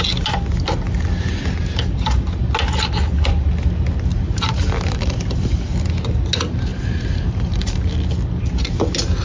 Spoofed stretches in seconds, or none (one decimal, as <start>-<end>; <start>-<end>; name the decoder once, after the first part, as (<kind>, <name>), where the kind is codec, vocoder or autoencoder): 1.3-2.5 (vocoder, BigVGAN v2); 4.1-5.7; 6.7-7.9